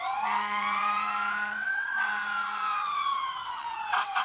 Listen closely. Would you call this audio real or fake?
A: fake